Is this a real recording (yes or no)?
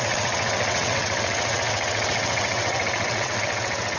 no